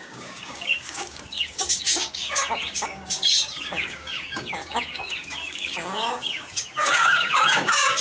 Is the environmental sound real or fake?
fake